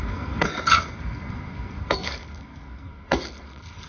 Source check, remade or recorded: remade